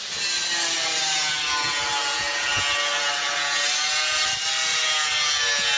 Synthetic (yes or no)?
no